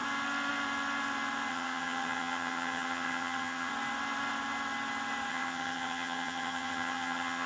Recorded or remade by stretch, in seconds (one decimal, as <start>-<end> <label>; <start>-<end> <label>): 0.0-1.5 recorded; 1.5-3.7 remade; 3.7-5.3 recorded; 5.3-7.5 remade